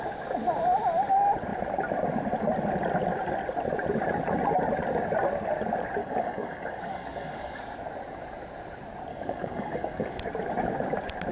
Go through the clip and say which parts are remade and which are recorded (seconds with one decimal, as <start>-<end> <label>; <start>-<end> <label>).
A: 0.0-6.0 recorded; 6.0-7.6 remade; 7.6-9.1 recorded; 9.1-10.2 remade; 10.2-11.3 recorded